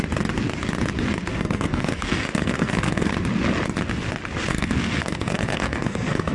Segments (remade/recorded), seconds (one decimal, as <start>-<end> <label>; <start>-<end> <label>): 0.0-1.3 recorded; 1.3-3.1 remade; 3.1-4.5 recorded; 4.5-6.3 remade